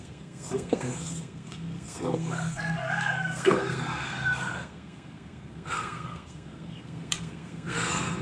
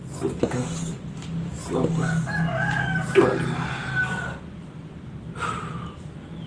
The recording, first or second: second